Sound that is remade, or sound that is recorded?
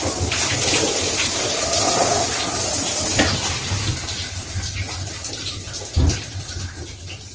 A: recorded